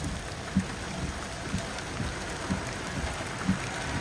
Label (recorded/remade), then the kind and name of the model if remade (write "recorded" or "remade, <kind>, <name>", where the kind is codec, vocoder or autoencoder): recorded